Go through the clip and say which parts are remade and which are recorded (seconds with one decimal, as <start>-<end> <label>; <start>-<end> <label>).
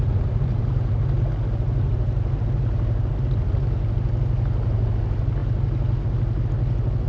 0.0-7.1 recorded